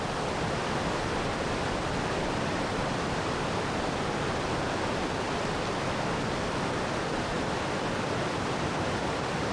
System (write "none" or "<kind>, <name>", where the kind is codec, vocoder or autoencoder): vocoder, BigVGAN v2